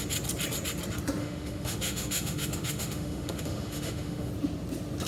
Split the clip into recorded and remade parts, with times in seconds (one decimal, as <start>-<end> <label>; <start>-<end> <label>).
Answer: 0.0-1.2 recorded; 1.2-4.3 remade; 4.3-5.1 recorded